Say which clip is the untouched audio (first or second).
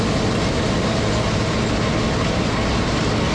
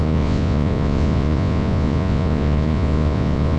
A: first